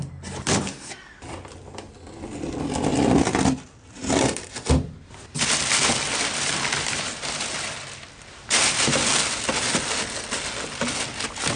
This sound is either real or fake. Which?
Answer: real